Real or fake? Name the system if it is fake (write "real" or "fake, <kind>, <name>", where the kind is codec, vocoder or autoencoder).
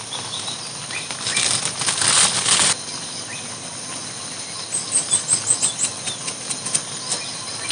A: real